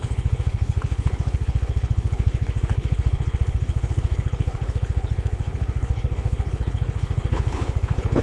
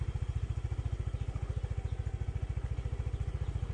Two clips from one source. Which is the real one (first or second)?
second